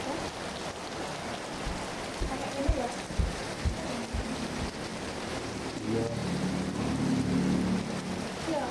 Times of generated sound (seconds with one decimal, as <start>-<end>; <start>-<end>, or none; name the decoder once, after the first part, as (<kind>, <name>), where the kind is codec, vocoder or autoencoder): 4.9-5.6 (vocoder, BigVGAN v2); 6.2-6.7

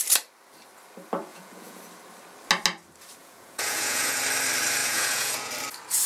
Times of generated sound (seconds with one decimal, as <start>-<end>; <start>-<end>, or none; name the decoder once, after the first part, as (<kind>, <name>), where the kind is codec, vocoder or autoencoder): 1.3-1.8 (vocoder, Vocos); 3.2-4.2; 4.8-5.5